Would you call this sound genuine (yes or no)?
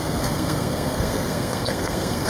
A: no